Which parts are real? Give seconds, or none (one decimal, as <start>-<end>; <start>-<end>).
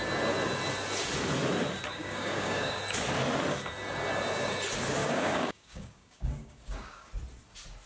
0.0-1.9; 2.8-5.0; 7.1-7.9